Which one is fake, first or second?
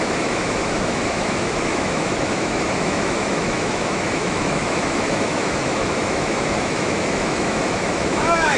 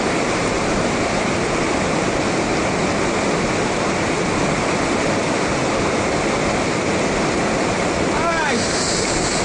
first